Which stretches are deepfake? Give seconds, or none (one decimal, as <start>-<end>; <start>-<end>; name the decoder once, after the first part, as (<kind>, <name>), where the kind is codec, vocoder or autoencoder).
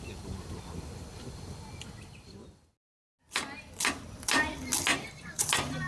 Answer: 4.9-5.4 (vocoder, BigVGAN v2)